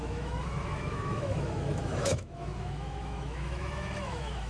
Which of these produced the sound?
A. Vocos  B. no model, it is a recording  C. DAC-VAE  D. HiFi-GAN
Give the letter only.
C